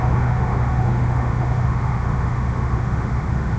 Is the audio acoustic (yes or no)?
no